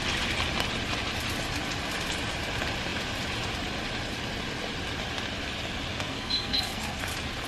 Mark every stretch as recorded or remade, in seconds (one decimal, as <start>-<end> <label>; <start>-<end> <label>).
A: 0.0-5.9 recorded; 5.9-7.0 remade; 7.0-7.5 recorded